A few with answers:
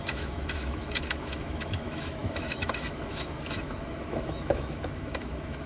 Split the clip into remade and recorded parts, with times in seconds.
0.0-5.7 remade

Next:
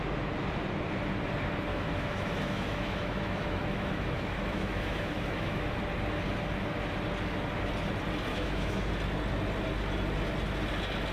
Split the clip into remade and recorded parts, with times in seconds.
0.0-1.7 recorded; 1.7-5.6 remade; 5.6-8.3 recorded; 8.3-8.9 remade; 8.9-11.1 recorded

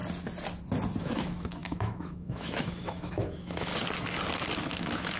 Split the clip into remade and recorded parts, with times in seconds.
0.0-1.0 recorded; 1.0-3.7 remade; 3.7-4.7 recorded; 4.7-5.2 remade

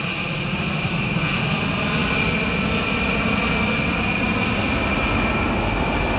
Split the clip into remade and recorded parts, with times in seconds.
0.0-6.2 recorded